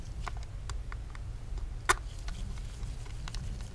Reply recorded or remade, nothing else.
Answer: recorded